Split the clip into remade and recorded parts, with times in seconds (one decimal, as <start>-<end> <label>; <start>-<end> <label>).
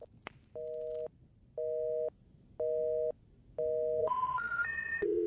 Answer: 0.0-4.0 recorded; 4.0-5.3 remade